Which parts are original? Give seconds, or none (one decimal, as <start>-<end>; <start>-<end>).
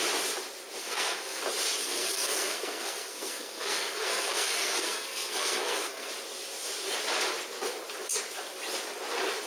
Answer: 0.0-0.8; 1.4-1.8; 6.1-9.5